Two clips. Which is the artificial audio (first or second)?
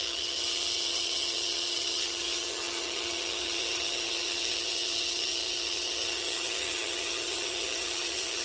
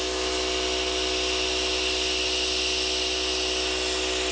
first